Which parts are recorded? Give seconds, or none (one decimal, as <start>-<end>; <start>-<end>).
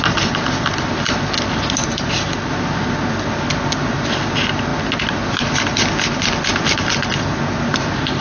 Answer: 0.0-8.2